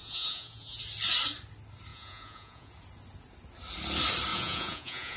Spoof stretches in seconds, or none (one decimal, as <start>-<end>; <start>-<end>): 0.0-0.8; 1.9-2.7; 4.3-5.2